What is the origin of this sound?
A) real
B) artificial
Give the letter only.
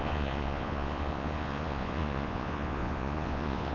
B